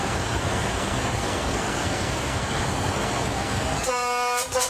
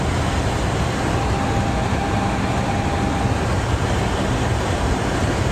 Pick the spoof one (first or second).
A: first